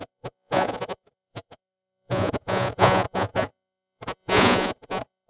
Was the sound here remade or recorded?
remade